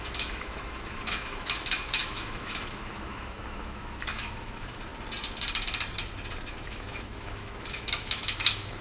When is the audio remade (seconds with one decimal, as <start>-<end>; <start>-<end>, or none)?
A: 0.0-4.9; 6.4-8.8